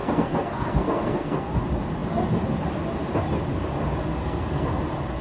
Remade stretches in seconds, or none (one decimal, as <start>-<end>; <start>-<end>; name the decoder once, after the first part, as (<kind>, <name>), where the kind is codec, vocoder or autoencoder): 0.0-1.5 (codec, SNAC); 4.2-4.8